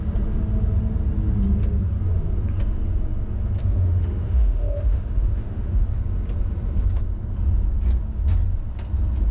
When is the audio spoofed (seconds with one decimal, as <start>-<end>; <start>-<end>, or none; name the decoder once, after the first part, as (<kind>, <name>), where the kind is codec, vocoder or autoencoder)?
3.6-5.8 (autoencoder, DAC-VAE)

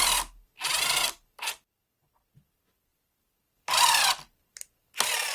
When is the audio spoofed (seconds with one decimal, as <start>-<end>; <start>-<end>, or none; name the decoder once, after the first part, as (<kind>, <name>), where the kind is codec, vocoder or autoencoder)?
2.9-4.0 (vocoder, BigVGAN v2)

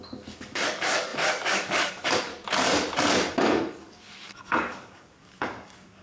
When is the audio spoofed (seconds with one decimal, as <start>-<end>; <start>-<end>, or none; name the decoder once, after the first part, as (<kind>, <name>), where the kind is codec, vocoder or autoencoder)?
0.0-2.3 (codec, DAC); 3.3-6.0

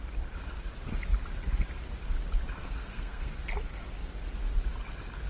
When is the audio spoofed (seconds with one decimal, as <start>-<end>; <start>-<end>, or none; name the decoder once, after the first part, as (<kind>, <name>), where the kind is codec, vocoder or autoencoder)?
2.6-3.3 (codec, SNAC)

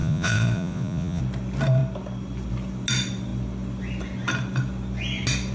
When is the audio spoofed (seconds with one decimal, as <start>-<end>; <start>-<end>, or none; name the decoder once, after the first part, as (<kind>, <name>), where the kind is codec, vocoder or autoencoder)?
0.0-1.2 (vocoder, Vocos)

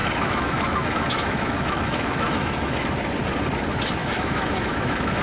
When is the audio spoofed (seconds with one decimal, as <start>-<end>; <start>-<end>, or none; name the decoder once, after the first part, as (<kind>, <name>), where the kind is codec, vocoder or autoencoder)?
0.0-2.9 (autoencoder, DAC-VAE); 4.0-5.2